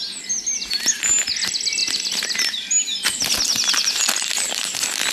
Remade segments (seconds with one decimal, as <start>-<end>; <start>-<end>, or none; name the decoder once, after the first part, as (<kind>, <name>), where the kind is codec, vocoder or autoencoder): none